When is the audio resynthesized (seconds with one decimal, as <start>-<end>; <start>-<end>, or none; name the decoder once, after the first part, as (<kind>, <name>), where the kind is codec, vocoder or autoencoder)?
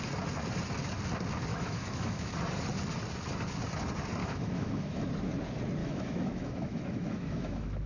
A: 1.5-2.3 (autoencoder, DAC-VAE); 4.2-5.1; 5.8-7.9